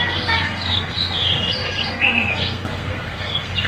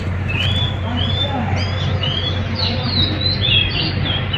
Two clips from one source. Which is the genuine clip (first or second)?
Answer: second